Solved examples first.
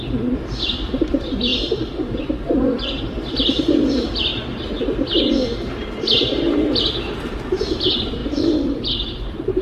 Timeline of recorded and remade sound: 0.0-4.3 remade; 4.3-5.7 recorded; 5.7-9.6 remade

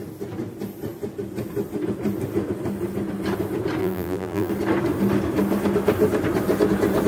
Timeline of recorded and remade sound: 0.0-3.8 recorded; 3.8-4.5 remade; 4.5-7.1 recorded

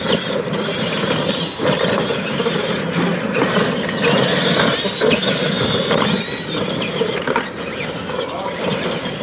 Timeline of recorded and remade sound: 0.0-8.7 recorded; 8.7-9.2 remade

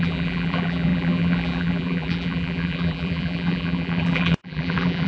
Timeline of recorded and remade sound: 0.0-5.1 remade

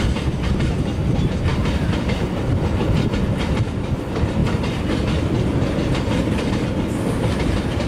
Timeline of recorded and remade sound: 0.0-4.4 remade; 4.4-6.4 recorded; 6.4-7.9 remade